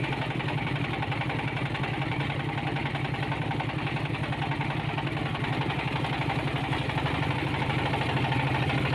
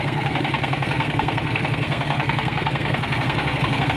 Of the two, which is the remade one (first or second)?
second